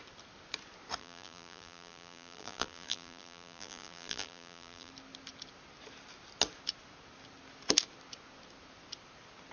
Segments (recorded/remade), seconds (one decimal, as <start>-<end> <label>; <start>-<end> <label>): 0.0-1.0 recorded; 1.0-4.9 remade; 4.9-9.5 recorded